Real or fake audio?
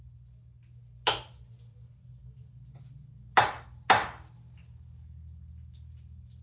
real